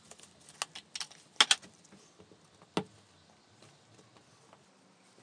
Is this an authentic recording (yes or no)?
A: yes